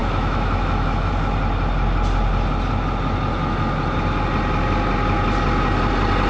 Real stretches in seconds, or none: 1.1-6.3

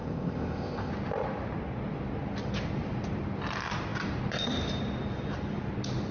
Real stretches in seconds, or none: 0.9-6.1

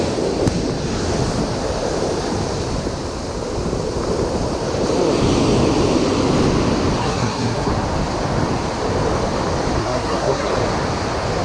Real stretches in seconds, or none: 0.0-7.0; 7.7-9.8; 10.5-11.4

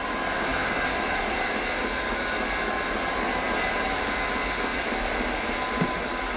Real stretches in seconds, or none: 0.0-6.4